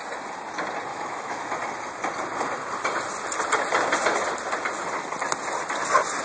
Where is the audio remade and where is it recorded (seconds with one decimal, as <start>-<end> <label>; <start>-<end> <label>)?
0.0-0.9 recorded; 0.9-1.5 remade; 1.5-6.2 recorded